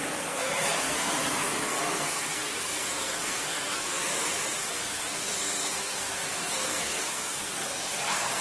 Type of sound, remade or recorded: remade